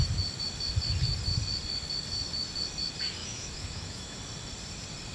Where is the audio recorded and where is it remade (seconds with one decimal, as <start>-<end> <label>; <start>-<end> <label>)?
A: 0.0-3.2 recorded; 3.2-4.2 remade; 4.2-5.1 recorded

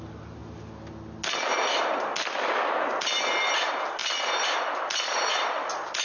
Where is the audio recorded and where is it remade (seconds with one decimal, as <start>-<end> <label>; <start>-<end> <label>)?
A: 0.0-6.0 recorded

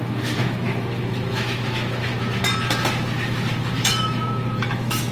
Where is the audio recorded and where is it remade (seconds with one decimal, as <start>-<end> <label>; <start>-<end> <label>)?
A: 0.0-2.1 remade; 2.1-3.8 recorded; 3.8-5.1 remade

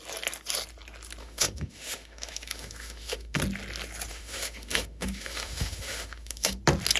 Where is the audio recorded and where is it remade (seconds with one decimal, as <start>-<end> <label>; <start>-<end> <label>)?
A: 0.0-1.2 recorded; 1.2-3.4 remade; 3.4-4.1 recorded; 4.1-6.6 remade; 6.6-7.0 recorded

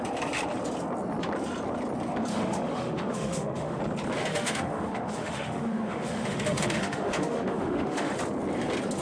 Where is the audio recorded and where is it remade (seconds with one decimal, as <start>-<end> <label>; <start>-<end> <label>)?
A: 0.0-2.3 recorded; 2.3-3.8 remade; 3.8-4.3 recorded; 4.3-8.1 remade; 8.1-9.0 recorded

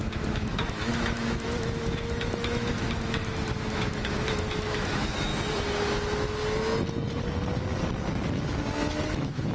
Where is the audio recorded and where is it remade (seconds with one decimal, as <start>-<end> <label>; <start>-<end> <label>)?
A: 0.0-5.3 remade; 5.3-8.9 recorded; 8.9-9.5 remade

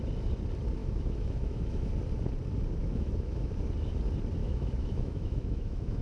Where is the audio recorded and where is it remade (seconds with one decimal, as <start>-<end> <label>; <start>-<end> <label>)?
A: 0.0-0.8 recorded; 0.8-1.9 remade; 1.9-2.8 recorded; 2.8-3.5 remade; 3.5-4.4 recorded; 4.4-6.0 remade